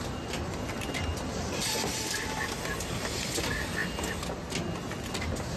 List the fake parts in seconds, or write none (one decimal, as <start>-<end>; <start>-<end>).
1.1-2.4